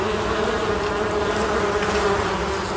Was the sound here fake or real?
real